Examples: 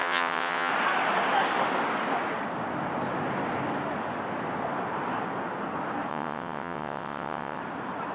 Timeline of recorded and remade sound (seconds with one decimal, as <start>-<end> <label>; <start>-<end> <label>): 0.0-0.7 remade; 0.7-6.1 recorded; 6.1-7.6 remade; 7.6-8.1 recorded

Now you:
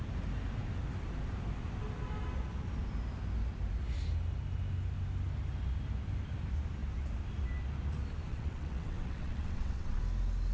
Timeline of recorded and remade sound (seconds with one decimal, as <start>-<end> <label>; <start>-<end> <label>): 0.0-8.3 recorded; 8.3-10.0 remade; 10.0-10.5 recorded

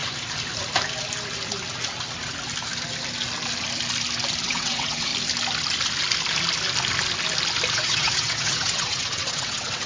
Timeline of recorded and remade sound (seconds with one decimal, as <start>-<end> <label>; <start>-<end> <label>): 0.0-4.4 recorded; 4.4-5.1 remade; 5.1-7.7 recorded; 7.7-9.9 remade

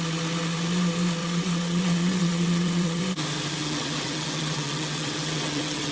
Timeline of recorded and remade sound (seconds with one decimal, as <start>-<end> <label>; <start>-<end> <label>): 0.0-1.2 recorded; 1.2-3.0 remade; 3.0-3.6 recorded; 3.6-5.9 remade

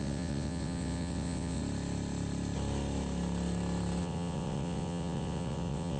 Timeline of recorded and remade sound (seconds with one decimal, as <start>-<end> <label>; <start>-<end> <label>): 0.0-1.6 remade; 1.6-4.0 recorded; 4.0-6.0 remade

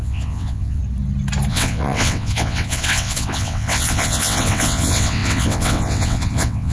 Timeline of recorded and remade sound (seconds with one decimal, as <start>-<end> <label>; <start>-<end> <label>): 0.0-0.8 remade; 0.8-1.5 recorded; 1.5-6.7 remade